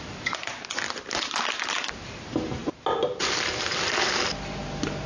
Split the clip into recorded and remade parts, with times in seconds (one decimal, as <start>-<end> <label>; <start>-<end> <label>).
0.0-5.1 recorded